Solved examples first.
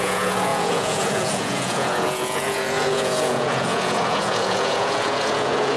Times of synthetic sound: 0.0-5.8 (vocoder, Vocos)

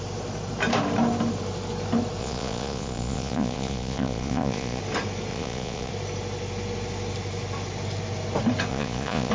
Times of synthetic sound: 2.2-4.8 (vocoder, Vocos); 5.3-5.9; 8.7-9.3

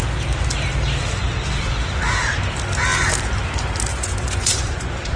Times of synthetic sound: 3.9-5.2 (vocoder, Vocos)

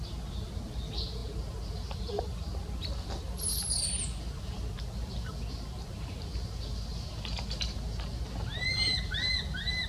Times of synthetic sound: none

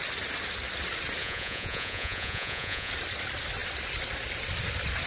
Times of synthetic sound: 1.2-2.9 (vocoder, Vocos)

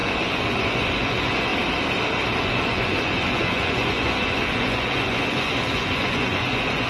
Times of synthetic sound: 0.0-1.5 (vocoder, Vocos); 2.4-6.9

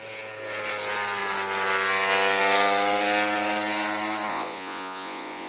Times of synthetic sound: 4.3-5.5 (vocoder, Vocos)